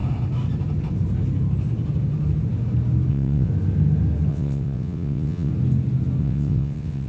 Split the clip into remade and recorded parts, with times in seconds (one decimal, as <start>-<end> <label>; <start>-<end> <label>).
0.0-3.1 recorded; 3.1-3.5 remade; 3.5-4.3 recorded; 4.3-5.5 remade; 5.5-6.2 recorded; 6.2-7.1 remade